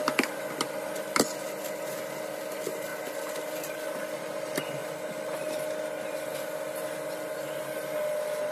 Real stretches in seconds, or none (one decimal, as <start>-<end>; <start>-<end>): 0.0-8.5